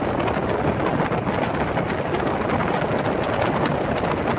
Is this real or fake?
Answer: real